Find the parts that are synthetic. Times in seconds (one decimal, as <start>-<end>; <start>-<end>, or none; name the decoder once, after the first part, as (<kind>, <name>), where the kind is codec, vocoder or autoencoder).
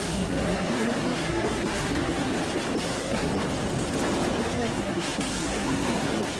0.0-2.3 (codec, SNAC); 2.8-3.3; 4.4-6.4